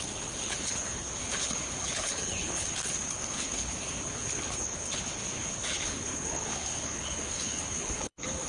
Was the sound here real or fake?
fake